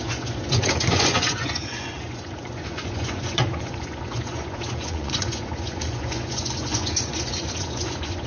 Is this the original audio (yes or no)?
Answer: no